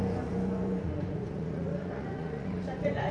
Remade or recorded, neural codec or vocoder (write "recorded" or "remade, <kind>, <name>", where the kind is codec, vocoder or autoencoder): remade, vocoder, Vocos